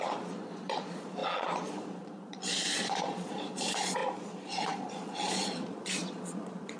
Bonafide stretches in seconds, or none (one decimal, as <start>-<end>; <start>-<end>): none